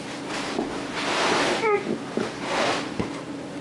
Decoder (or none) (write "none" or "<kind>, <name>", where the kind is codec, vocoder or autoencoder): none